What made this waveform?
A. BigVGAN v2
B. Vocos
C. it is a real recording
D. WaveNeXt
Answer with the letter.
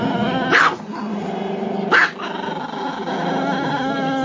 C